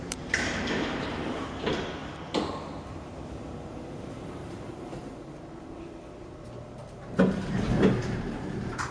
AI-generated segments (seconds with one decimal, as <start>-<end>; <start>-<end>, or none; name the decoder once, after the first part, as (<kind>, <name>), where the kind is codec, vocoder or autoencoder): 0.0-2.0 (vocoder, BigVGAN v2); 2.9-8.9